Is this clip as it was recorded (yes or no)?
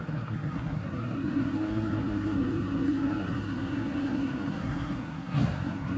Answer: no